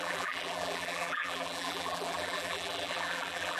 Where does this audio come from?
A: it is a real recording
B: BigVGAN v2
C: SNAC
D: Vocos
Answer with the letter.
B